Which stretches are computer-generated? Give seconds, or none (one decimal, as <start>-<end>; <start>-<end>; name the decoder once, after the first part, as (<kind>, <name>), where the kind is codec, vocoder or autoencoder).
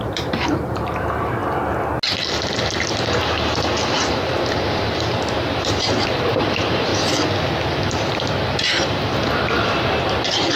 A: 0.0-1.4 (vocoder, BigVGAN v2); 4.1-6.9; 7.8-10.6